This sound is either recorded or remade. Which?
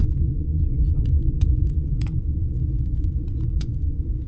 remade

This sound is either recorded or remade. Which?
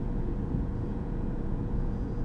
remade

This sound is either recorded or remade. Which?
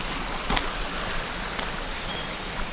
recorded